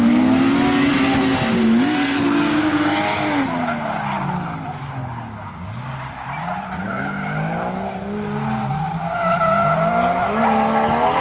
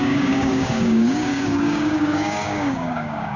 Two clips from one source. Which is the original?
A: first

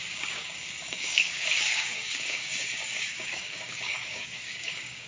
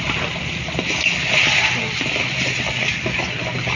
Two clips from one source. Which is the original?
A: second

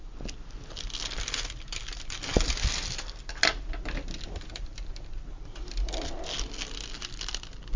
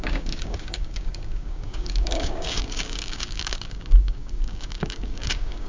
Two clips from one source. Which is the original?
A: first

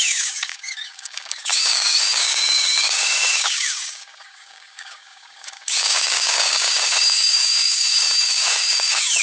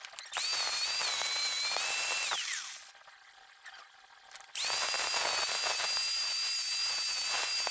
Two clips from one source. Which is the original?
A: second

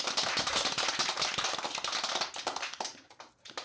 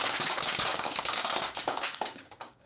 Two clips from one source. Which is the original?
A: first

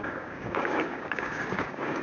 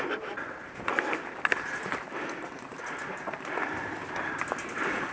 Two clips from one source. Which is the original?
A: second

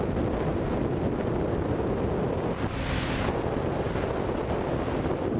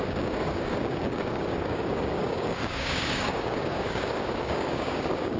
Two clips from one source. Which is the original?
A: first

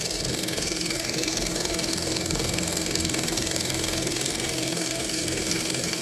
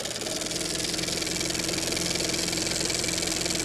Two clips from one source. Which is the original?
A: second